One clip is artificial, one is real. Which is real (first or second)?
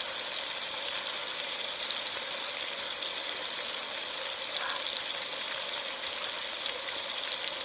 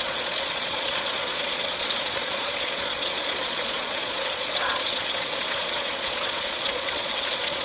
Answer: first